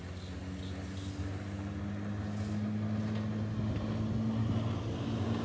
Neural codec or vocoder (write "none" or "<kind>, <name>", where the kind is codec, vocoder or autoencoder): none